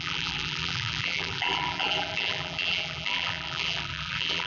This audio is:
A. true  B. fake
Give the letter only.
B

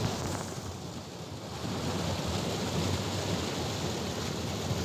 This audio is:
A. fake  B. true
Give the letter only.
B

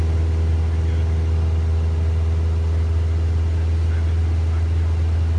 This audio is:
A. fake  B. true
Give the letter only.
B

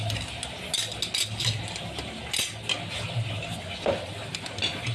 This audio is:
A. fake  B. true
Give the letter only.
B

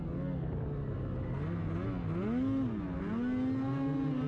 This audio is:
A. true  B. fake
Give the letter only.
A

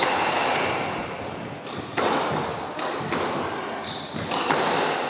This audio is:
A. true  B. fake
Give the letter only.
A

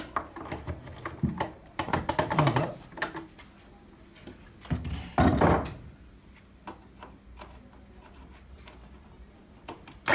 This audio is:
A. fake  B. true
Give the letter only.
B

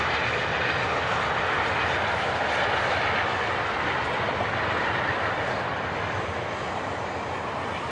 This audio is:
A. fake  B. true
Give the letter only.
B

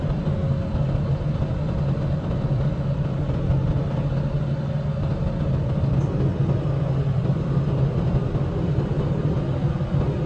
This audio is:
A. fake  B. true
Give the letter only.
B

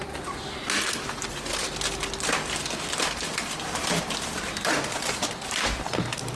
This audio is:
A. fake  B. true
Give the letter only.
B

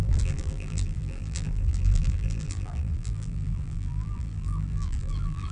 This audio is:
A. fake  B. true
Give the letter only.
A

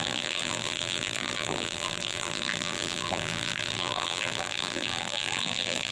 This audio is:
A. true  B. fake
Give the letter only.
B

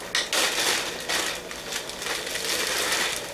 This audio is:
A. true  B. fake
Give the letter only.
A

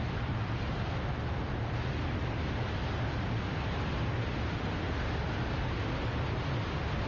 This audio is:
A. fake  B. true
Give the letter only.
B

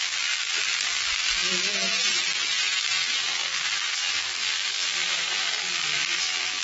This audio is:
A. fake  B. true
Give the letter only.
A